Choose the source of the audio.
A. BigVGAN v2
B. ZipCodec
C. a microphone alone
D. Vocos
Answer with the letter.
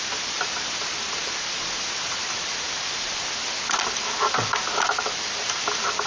A